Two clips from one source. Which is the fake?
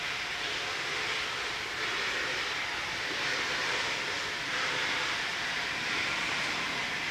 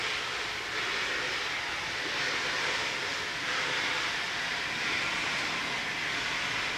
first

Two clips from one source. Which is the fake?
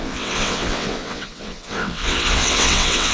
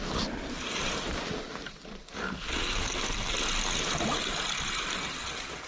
first